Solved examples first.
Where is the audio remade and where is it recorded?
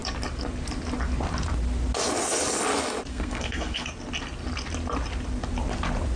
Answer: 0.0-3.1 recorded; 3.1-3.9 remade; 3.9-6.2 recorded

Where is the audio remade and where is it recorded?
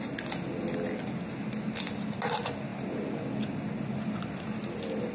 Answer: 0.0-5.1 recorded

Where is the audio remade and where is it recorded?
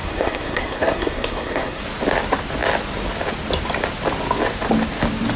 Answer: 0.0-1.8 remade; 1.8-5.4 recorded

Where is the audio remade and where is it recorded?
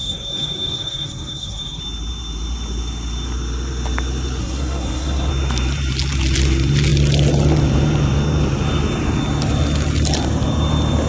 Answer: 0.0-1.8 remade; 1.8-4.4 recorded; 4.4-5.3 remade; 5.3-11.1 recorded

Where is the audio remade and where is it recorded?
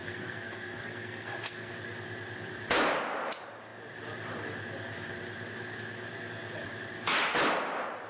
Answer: 0.0-1.7 remade; 1.7-8.1 recorded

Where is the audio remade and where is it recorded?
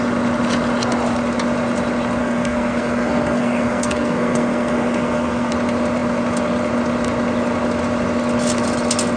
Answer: 0.0-2.2 recorded; 2.2-5.5 remade; 5.5-9.2 recorded